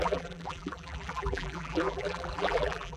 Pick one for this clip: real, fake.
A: fake